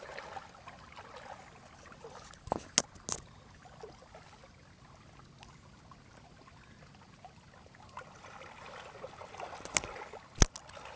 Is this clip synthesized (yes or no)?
no